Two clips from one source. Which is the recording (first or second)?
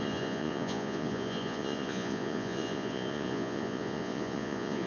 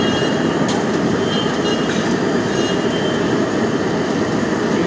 second